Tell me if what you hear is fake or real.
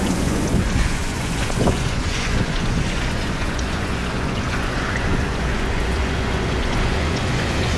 fake